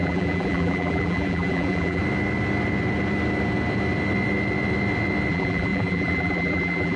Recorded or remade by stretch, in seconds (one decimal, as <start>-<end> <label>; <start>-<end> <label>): 0.0-2.0 remade; 2.0-5.3 recorded; 5.3-7.0 remade